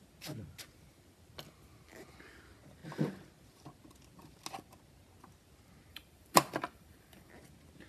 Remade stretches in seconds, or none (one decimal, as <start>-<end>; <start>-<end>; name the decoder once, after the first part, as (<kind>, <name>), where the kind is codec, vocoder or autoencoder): 5.9-7.3 (vocoder, BigVGAN v2)